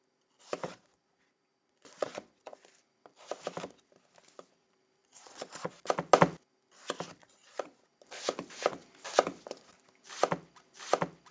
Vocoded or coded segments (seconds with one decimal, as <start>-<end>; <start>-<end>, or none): 0.6-2.6; 5.0-5.7; 7.2-7.8